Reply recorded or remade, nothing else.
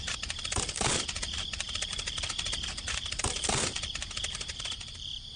remade